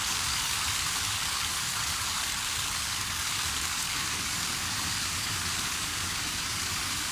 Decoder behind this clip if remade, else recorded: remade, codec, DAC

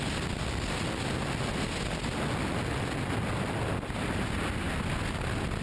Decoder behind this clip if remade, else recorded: recorded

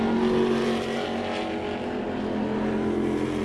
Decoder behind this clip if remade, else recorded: recorded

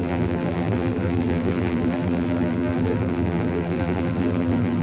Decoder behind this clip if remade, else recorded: remade, vocoder, BigVGAN v2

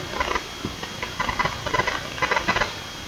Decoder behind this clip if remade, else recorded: remade, vocoder, BigVGAN v2